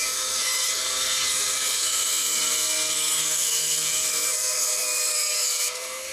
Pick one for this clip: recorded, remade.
remade